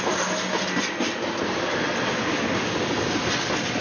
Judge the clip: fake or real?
real